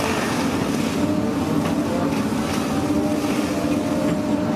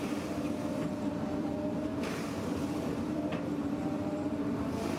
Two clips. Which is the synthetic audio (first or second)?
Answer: second